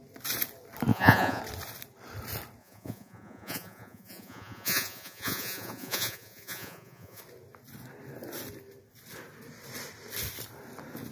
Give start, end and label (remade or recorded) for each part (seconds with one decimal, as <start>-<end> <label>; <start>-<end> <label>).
0.0-0.9 recorded; 0.9-1.4 remade; 1.4-2.6 recorded; 2.6-7.2 remade; 7.2-11.1 recorded